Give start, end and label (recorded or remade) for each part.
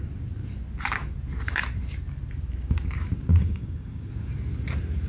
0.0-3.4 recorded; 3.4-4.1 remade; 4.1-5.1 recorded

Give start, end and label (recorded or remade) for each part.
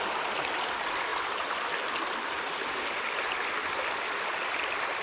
0.0-5.0 recorded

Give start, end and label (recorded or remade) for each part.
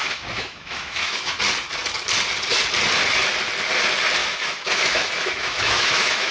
0.0-1.3 remade; 1.3-4.2 recorded; 4.2-6.3 remade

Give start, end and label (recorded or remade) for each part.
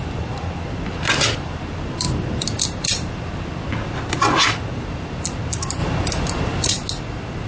0.0-7.5 recorded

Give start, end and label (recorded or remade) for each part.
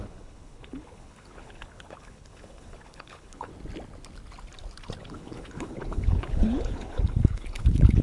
0.0-3.5 remade; 3.5-5.0 recorded; 5.0-8.0 remade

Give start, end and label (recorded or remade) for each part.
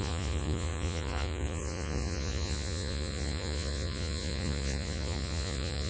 0.0-5.9 remade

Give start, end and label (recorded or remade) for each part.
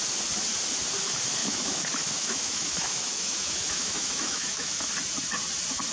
0.0-1.4 recorded; 1.4-4.9 remade; 4.9-5.9 recorded